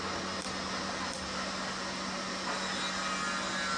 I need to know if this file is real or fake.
real